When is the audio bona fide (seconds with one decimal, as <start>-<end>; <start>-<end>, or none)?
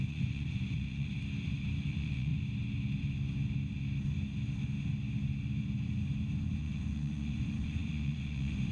1.1-1.9; 2.3-6.6